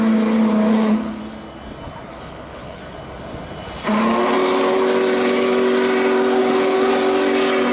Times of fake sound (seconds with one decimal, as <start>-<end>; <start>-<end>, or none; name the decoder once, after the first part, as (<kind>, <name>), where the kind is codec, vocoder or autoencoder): 0.7-1.2 (codec, HILCodec); 2.1-2.8; 6.4-6.9